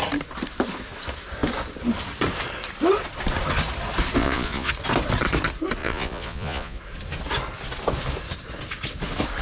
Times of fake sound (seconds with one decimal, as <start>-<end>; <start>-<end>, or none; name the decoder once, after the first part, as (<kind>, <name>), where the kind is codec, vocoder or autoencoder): 4.2-4.7 (vocoder, Vocos); 5.8-6.8

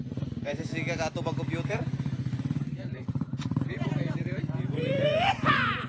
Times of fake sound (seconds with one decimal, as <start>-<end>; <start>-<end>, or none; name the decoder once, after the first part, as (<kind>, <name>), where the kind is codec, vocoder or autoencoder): 0.0-0.7 (vocoder, Vocos); 1.7-5.9